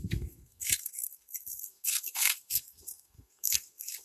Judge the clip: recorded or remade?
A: remade